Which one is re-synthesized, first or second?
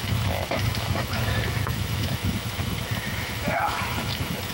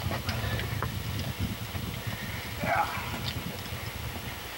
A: first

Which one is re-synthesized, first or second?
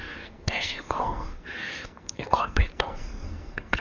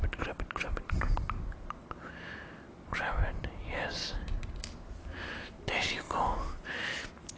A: first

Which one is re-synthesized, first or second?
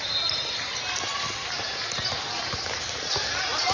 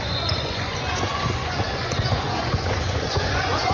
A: second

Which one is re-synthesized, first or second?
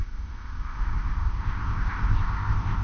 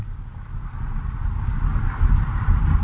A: first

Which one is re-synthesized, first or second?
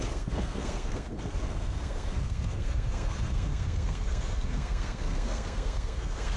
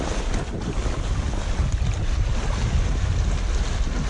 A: first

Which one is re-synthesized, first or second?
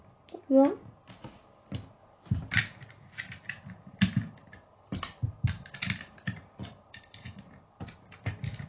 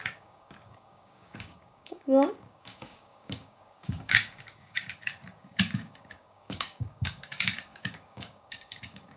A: second